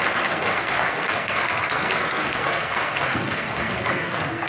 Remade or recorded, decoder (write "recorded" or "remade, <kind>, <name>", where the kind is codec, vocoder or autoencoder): remade, codec, SNAC